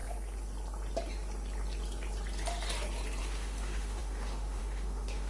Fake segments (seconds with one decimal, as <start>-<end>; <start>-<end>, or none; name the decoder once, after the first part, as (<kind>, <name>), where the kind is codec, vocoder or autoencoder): 3.2-5.3 (autoencoder, DAC-VAE)